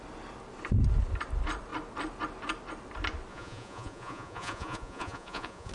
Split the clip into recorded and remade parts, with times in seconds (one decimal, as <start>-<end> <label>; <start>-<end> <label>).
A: 0.0-3.3 recorded; 3.3-5.7 remade